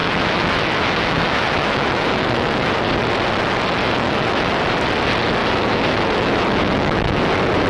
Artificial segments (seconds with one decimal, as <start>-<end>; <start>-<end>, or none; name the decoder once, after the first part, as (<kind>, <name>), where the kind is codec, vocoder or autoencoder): 0.0-2.7 (autoencoder, DAC-VAE); 3.8-4.5; 5.4-7.3